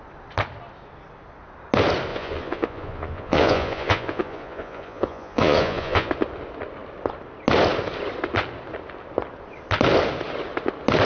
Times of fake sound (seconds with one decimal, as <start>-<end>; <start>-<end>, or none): 2.1-6.1